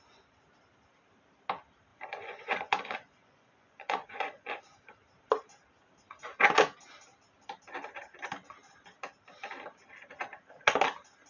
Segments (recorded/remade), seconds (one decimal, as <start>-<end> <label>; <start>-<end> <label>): 0.0-1.9 recorded; 1.9-4.6 remade; 4.6-11.3 recorded